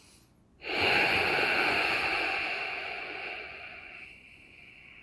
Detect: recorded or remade remade